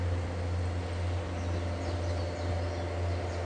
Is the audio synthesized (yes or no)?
no